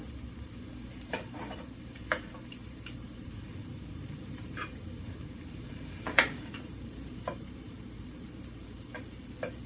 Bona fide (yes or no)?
no